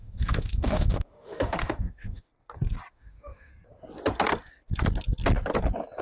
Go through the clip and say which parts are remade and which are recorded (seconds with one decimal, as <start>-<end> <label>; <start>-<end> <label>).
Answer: 0.0-2.3 remade; 2.3-2.9 recorded; 2.9-3.5 remade; 3.5-6.0 recorded

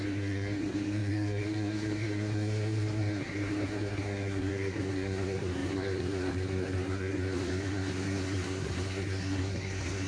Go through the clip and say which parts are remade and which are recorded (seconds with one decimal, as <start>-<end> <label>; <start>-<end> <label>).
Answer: 0.0-10.1 remade

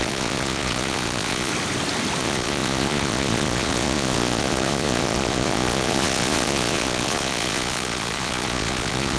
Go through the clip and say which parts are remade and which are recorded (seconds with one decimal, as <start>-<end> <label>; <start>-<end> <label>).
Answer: 0.0-1.5 remade; 1.5-2.2 recorded; 2.2-9.2 remade

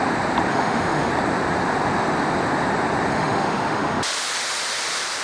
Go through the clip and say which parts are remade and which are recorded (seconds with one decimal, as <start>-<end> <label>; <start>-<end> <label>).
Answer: 0.0-0.5 recorded; 0.5-1.1 remade; 1.1-3.1 recorded; 3.1-4.0 remade; 4.0-5.2 recorded

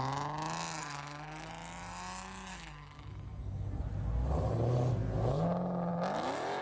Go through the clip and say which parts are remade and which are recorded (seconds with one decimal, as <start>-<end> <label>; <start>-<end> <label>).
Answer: 0.0-0.8 recorded; 0.8-1.5 remade; 1.5-2.5 recorded; 2.5-3.8 remade; 3.8-6.6 recorded

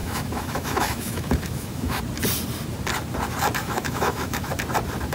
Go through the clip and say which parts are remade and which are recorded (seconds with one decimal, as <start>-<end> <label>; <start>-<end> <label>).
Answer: 0.0-2.0 remade; 2.0-3.6 recorded; 3.6-4.5 remade; 4.5-5.1 recorded

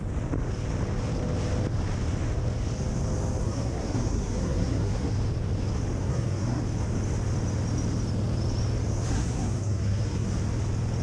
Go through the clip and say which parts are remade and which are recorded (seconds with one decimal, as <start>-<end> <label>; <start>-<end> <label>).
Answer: 0.0-3.4 recorded; 3.4-5.1 remade; 5.1-6.0 recorded; 6.0-6.6 remade; 6.6-9.1 recorded; 9.1-10.3 remade; 10.3-11.0 recorded

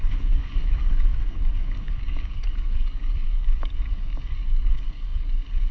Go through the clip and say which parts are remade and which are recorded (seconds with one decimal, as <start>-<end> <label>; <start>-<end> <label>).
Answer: 0.0-5.7 remade